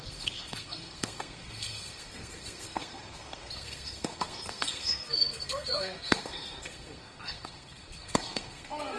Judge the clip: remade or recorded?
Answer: remade